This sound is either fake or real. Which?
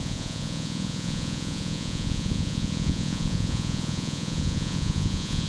fake